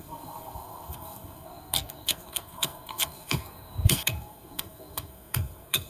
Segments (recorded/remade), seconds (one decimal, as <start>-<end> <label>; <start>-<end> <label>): 0.0-5.9 remade